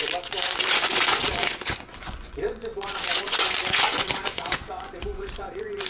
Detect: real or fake fake